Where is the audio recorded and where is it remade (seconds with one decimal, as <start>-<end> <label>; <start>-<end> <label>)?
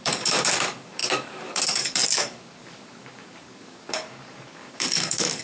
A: 0.0-5.4 remade